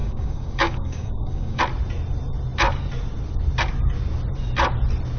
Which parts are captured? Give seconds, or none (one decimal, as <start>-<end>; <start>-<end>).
1.6-5.2